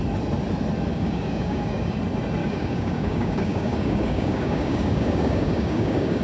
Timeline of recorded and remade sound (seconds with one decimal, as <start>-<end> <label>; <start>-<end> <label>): 0.0-0.9 recorded; 0.9-2.0 remade; 2.0-2.4 recorded; 2.4-6.2 remade